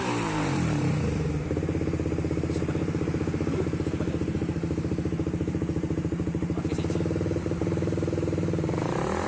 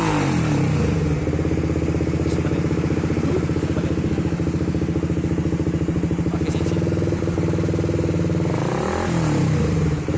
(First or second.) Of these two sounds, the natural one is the second